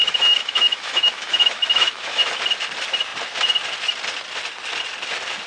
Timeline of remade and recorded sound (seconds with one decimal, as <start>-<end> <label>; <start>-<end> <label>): 0.0-2.3 remade; 2.3-5.5 recorded